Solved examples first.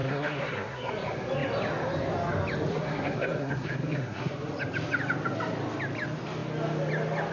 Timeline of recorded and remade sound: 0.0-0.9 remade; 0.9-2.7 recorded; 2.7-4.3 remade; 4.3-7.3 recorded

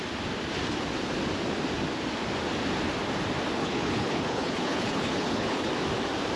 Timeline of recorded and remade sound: 0.0-3.6 recorded; 3.6-5.7 remade; 5.7-6.4 recorded

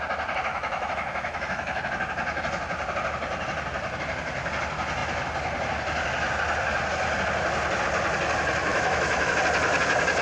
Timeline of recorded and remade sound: 0.0-0.5 recorded; 0.5-1.8 remade; 1.8-8.7 recorded; 8.7-9.4 remade; 9.4-10.2 recorded